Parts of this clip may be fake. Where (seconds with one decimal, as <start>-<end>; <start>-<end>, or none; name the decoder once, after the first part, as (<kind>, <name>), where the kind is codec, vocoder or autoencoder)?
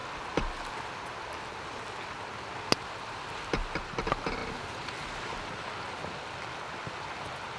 none